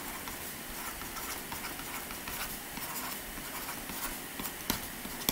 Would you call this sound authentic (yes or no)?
yes